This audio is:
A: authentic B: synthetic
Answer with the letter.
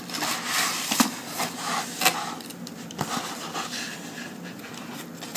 A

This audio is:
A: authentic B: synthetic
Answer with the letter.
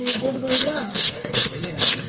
B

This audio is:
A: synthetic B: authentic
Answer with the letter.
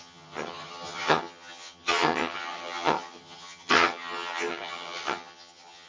A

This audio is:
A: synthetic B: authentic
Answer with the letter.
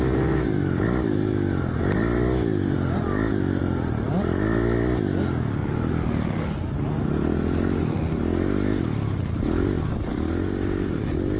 B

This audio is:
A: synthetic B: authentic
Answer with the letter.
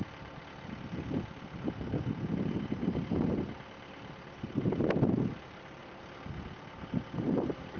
B